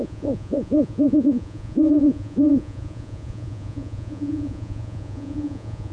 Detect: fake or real fake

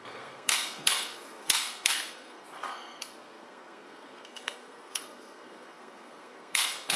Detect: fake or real fake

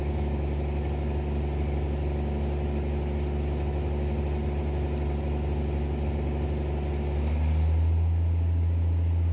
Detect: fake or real real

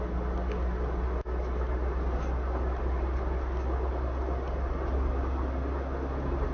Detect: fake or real real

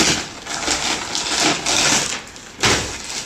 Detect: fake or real real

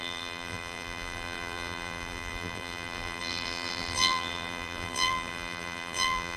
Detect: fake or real fake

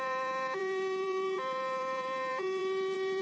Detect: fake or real fake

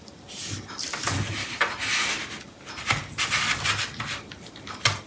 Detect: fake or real real